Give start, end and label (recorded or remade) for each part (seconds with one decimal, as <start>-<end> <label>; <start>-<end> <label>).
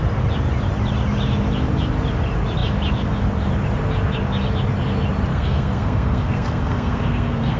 0.0-5.3 recorded; 5.3-7.6 remade